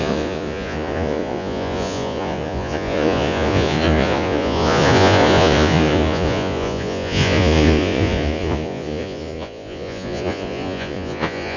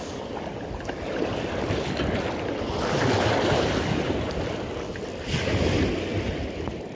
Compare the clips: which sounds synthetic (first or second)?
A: first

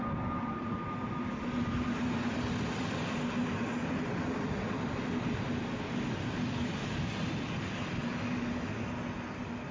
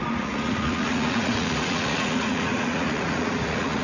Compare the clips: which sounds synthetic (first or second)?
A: second